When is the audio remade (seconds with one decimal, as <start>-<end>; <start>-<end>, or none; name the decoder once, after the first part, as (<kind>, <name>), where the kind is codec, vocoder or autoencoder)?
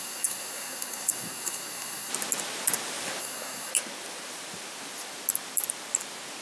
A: 0.0-2.1 (codec, SNAC); 3.2-3.7